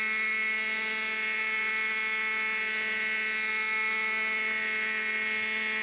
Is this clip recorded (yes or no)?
yes